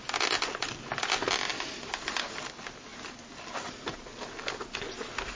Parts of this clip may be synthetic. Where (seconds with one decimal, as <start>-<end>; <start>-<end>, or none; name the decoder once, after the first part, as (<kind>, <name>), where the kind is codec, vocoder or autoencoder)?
2.9-4.0 (vocoder, BigVGAN v2)